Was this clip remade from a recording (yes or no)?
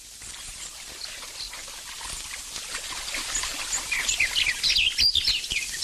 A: no